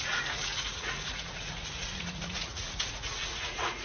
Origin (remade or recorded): remade